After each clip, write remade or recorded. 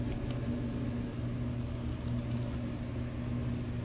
recorded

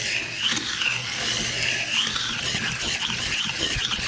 recorded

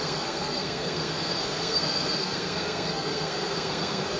remade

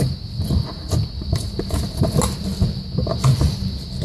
recorded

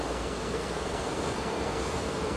remade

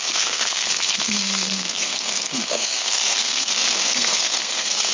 remade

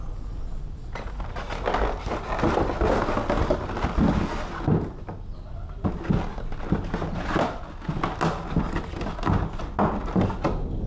recorded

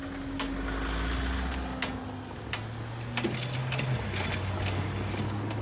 recorded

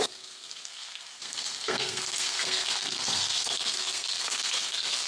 remade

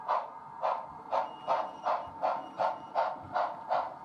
recorded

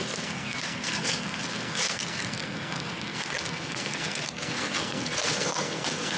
remade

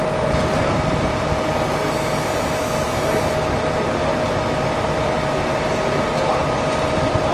recorded